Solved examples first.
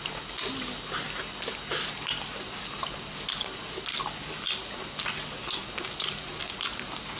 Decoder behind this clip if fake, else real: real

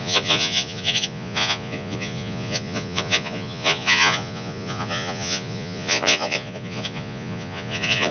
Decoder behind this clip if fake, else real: fake, vocoder, Vocos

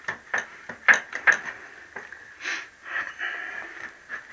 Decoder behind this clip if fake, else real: fake, vocoder, BigVGAN v2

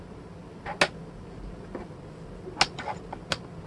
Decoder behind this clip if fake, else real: real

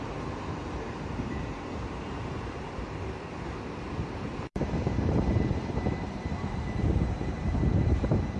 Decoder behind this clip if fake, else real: fake, vocoder, BigVGAN v2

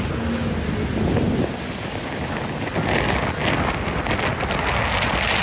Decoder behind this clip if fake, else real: real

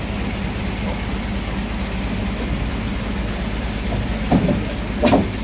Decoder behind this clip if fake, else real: real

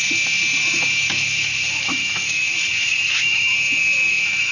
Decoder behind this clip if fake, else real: fake, autoencoder, DAC-VAE